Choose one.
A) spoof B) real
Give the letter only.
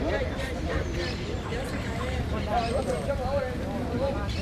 A